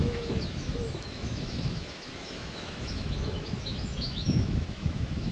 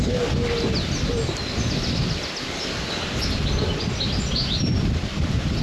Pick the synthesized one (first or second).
first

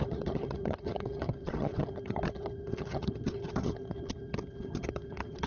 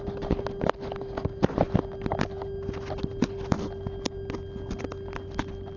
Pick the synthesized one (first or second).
first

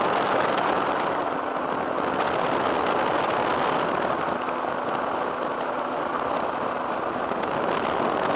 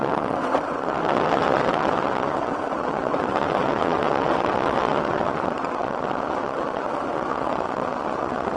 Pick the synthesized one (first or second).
second